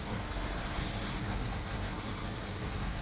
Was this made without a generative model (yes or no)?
no